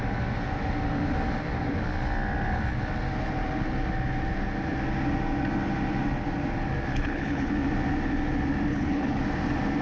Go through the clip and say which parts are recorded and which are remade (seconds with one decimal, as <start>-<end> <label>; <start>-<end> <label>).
0.0-6.9 recorded; 6.9-7.5 remade; 7.5-8.7 recorded; 8.7-9.2 remade; 9.2-9.8 recorded